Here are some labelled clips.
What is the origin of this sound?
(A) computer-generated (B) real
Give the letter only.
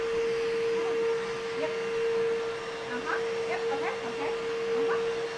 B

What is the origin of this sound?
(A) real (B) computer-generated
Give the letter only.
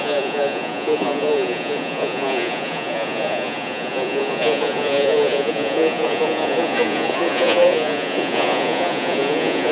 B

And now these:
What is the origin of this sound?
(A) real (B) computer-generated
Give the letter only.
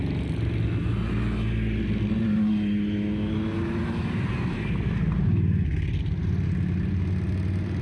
A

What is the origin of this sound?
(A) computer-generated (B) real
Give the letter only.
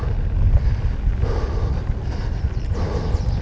B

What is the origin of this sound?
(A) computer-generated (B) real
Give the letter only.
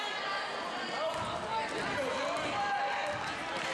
B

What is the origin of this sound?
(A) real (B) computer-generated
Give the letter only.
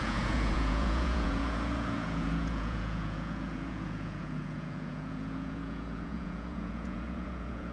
B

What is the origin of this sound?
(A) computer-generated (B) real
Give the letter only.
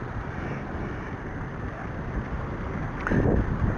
B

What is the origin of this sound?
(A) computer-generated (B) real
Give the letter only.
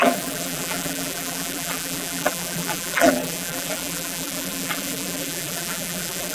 A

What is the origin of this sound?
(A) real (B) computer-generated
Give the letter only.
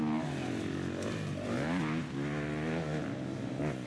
A